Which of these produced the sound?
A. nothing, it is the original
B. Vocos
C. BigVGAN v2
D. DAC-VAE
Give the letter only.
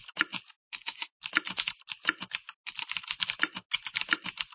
A